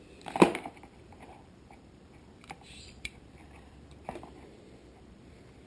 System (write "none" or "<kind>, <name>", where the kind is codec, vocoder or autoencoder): vocoder, BigVGAN v2